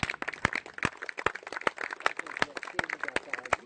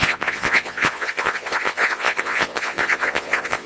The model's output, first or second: second